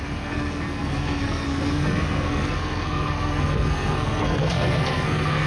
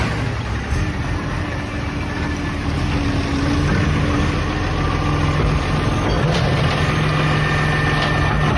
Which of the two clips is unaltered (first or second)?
second